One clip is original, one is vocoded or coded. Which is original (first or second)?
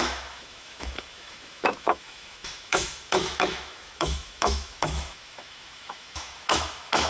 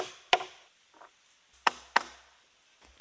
second